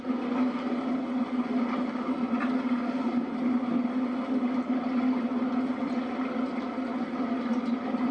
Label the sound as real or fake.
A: real